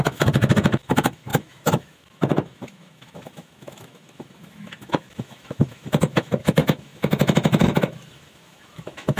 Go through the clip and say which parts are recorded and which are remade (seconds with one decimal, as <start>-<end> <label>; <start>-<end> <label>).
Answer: 0.0-9.2 remade